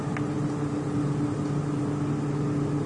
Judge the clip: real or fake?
real